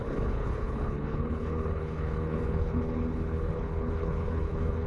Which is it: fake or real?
fake